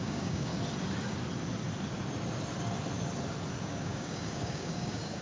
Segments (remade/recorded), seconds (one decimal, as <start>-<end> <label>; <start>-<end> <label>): 0.0-0.5 remade; 0.5-3.6 recorded; 3.6-5.2 remade